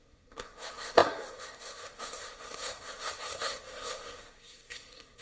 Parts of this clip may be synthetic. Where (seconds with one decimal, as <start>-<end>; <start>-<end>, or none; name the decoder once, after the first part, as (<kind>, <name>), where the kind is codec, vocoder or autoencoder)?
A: 0.0-5.2 (codec, SNAC)

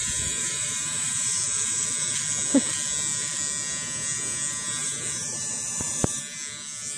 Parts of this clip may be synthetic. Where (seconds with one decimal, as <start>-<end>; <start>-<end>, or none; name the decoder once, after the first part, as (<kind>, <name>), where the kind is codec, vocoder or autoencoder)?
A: 0.0-2.1 (vocoder, BigVGAN v2); 4.8-6.2

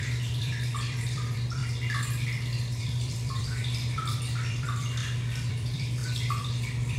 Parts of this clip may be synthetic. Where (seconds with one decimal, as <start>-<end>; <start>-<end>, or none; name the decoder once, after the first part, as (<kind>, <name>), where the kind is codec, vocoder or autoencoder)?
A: 0.0-1.6 (vocoder, BigVGAN v2); 2.8-5.0; 5.5-7.0

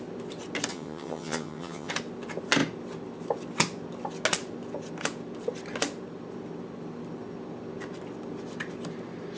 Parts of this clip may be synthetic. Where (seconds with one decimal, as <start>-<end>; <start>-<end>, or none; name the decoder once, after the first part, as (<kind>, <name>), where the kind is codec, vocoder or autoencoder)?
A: 0.7-1.9 (vocoder, HiFi-GAN)